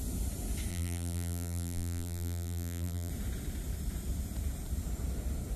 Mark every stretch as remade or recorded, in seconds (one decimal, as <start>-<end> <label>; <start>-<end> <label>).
0.0-0.7 recorded; 0.7-3.1 remade; 3.1-5.6 recorded